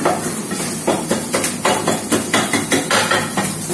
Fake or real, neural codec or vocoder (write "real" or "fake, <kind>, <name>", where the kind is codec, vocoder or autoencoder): real